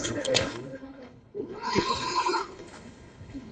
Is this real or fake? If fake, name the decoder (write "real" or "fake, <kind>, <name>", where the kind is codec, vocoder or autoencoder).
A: fake, codec, HILCodec